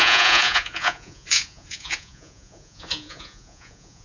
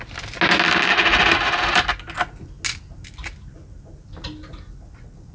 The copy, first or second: first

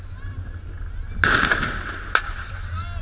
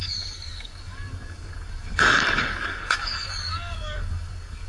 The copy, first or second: second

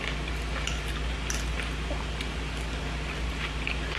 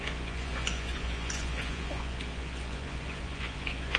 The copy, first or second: second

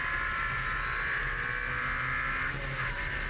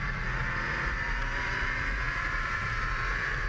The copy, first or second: second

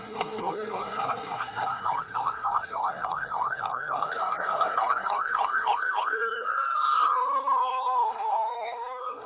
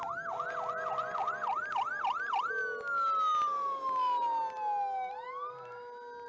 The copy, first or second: first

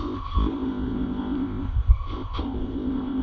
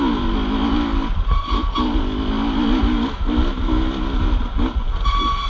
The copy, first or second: first